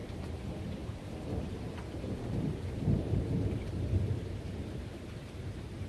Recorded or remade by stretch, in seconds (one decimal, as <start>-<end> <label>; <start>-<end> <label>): 0.0-5.9 remade